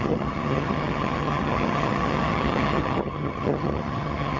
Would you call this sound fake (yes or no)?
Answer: yes